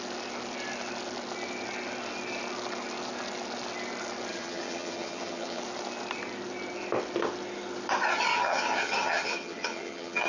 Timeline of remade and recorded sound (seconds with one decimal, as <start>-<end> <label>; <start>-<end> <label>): 0.0-4.3 recorded; 4.3-5.6 remade; 5.6-8.3 recorded; 8.3-10.3 remade